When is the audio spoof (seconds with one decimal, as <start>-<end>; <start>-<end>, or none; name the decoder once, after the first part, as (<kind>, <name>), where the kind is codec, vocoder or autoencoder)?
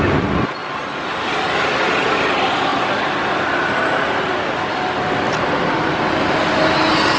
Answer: 0.6-1.7 (vocoder, BigVGAN v2)